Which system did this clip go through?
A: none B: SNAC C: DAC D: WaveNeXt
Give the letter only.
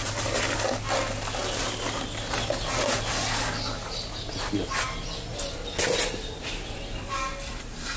A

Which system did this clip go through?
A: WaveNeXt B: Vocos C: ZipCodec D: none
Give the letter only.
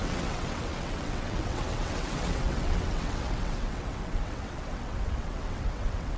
A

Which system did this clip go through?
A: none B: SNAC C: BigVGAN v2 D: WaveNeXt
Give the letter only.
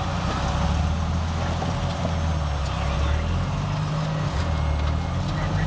A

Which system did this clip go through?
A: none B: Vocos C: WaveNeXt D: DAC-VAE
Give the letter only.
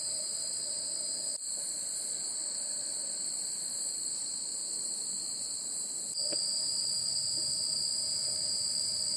A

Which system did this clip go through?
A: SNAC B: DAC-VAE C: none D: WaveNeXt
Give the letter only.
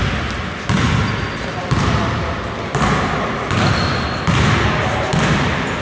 C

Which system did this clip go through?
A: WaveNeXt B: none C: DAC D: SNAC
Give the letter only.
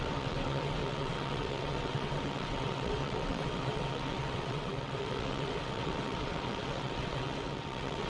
A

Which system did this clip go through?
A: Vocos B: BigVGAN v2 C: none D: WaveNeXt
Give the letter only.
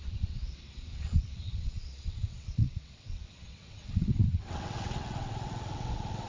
D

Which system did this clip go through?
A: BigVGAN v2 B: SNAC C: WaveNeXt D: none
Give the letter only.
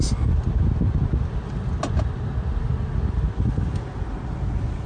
D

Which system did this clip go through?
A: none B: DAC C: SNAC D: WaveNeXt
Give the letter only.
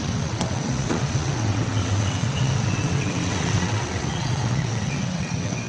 D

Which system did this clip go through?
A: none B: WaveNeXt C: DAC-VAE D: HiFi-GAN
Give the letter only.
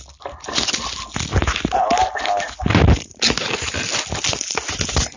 A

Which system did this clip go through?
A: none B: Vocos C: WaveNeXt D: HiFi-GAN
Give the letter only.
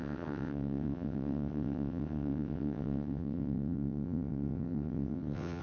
C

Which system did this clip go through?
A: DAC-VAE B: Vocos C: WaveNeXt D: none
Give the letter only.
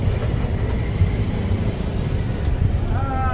D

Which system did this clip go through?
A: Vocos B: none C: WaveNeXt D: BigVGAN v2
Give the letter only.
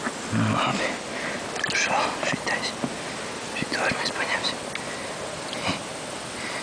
B